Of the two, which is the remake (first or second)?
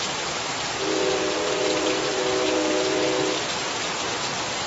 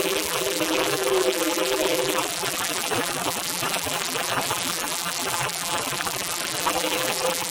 second